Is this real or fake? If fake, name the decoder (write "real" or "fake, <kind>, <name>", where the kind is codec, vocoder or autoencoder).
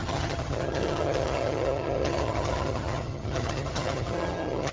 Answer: fake, vocoder, HiFi-GAN